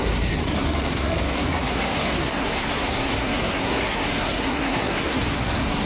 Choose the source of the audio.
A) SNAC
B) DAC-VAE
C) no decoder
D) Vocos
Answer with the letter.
A